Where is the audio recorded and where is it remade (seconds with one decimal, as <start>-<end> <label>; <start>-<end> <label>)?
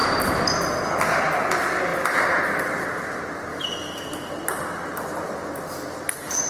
0.0-3.5 recorded; 3.5-4.3 remade; 4.3-6.5 recorded